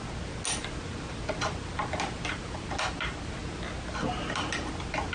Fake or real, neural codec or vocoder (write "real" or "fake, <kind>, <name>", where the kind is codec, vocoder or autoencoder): real